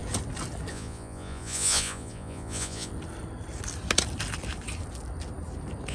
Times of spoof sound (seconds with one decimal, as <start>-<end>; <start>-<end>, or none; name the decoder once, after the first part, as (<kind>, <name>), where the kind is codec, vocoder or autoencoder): 0.7-2.9 (vocoder, Vocos)